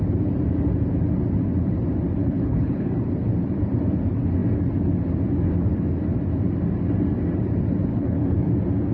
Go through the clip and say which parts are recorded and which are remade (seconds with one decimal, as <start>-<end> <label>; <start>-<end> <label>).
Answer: 0.0-2.2 recorded; 2.2-2.9 remade; 2.9-7.9 recorded; 7.9-8.5 remade; 8.5-8.9 recorded